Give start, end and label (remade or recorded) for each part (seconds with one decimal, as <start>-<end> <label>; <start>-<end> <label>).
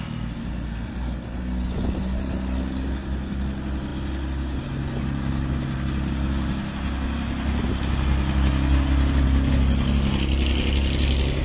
0.0-11.4 recorded